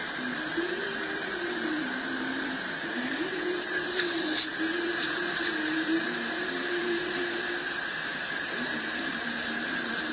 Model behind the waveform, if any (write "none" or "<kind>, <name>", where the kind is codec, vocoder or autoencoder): vocoder, BigVGAN v2